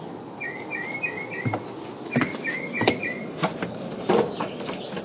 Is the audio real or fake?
real